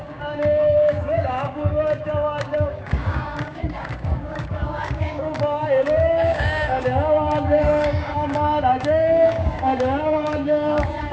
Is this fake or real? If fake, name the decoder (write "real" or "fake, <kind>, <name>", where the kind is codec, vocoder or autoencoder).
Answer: fake, codec, DAC